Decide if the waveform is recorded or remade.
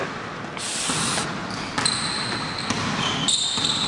recorded